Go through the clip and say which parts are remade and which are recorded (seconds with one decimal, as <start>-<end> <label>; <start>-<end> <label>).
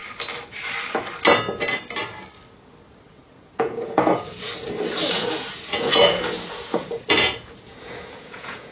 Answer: 0.0-3.1 recorded; 3.1-4.5 remade; 4.5-5.1 recorded; 5.1-8.7 remade